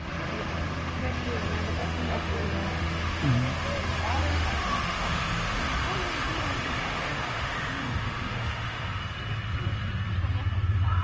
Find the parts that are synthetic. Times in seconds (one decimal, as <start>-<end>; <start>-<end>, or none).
1.8-3.3; 4.2-5.6; 6.8-9.0